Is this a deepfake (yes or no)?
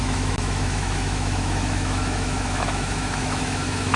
yes